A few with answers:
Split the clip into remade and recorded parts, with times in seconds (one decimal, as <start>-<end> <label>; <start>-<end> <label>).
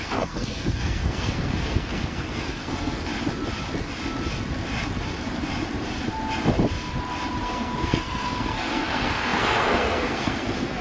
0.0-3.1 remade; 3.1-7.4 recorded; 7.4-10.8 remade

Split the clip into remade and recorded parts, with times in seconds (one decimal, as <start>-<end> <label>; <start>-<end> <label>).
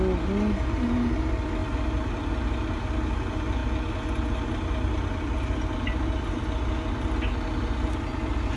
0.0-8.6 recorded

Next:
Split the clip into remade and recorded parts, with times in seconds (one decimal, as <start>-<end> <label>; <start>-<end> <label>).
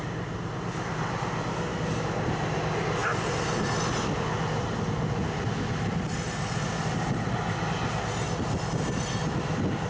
0.0-9.9 recorded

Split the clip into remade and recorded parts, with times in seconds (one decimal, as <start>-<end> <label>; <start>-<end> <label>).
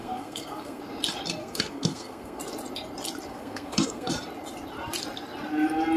0.0-0.8 remade; 0.8-1.4 recorded; 1.4-2.4 remade; 2.4-3.3 recorded; 3.3-4.1 remade; 4.1-6.0 recorded